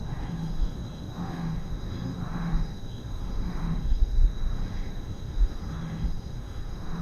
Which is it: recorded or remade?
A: remade